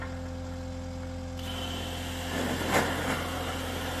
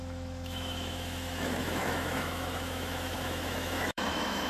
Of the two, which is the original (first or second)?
first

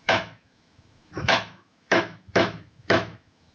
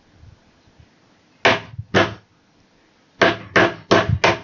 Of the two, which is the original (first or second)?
second